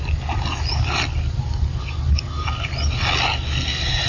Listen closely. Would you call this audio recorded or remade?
recorded